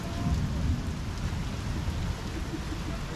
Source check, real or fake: real